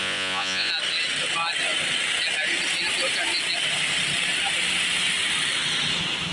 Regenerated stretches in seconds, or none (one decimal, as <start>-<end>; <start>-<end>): 0.0-0.7